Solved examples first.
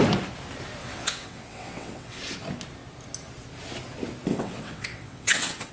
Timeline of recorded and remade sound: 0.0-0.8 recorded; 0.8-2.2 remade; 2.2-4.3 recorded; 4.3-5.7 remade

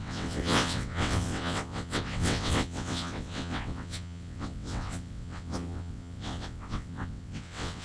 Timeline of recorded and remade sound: 0.0-7.8 remade

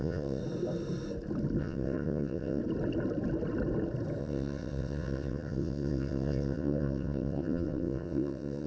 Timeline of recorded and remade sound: 0.0-0.4 remade; 0.4-1.6 recorded; 1.6-2.6 remade; 2.6-4.2 recorded; 4.2-8.7 remade